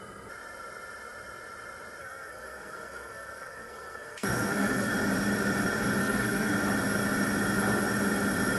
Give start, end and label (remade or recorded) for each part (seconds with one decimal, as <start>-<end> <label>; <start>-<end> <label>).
0.0-2.0 recorded; 2.0-4.9 remade; 4.9-6.0 recorded; 6.0-6.5 remade; 6.5-8.6 recorded